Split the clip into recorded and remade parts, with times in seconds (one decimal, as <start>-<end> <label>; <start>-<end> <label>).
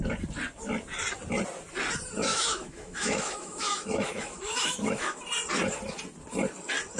0.0-2.3 recorded; 2.3-5.2 remade; 5.2-7.0 recorded